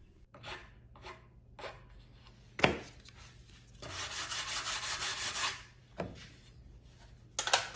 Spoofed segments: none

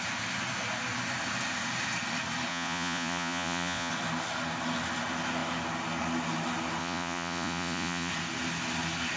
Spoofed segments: 2.5-3.9 (vocoder, Vocos); 6.8-8.1

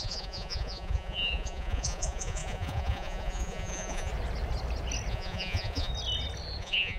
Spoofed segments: 0.0-4.1 (vocoder, Vocos); 5.1-5.9; 6.6-7.0

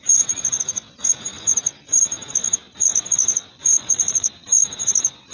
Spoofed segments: 3.5-4.3 (vocoder, Vocos)

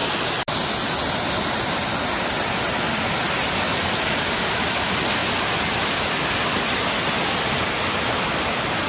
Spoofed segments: none

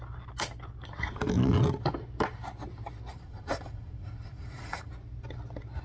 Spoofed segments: 3.1-4.9 (vocoder, Vocos)

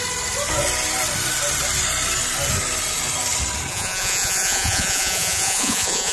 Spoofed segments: 3.7-6.1 (vocoder, Vocos)

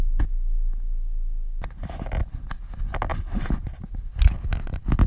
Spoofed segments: none